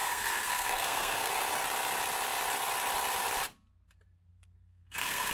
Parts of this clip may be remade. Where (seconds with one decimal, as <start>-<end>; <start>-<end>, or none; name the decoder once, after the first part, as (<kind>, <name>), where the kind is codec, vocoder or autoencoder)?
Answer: 0.0-1.3 (codec, SNAC); 4.3-5.3